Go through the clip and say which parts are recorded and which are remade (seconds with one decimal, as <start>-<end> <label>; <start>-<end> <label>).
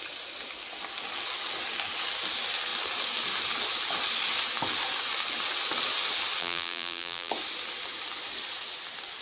0.0-6.4 recorded; 6.4-7.3 remade; 7.3-9.2 recorded